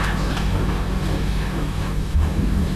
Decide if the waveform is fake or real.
fake